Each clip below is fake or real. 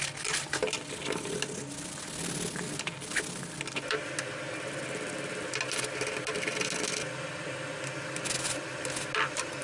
real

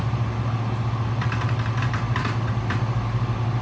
real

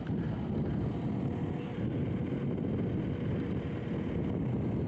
real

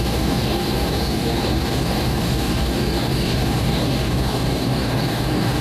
fake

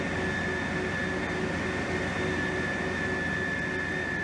real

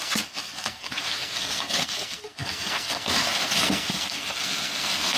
fake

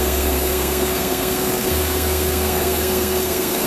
fake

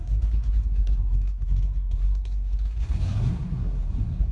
fake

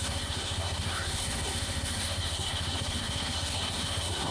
fake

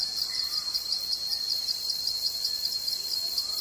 real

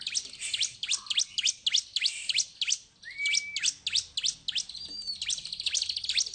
real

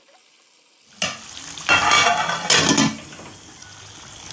real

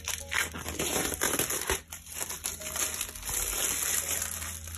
real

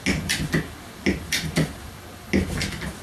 real